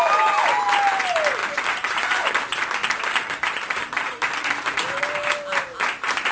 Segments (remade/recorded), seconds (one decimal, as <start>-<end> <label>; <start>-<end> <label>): 0.0-1.4 recorded; 1.4-2.3 remade; 2.3-2.8 recorded; 2.8-5.0 remade; 5.0-6.3 recorded